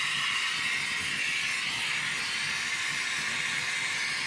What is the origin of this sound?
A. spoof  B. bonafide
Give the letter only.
B